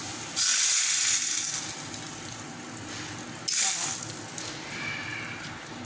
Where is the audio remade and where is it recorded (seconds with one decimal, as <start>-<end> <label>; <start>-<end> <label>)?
0.0-5.8 recorded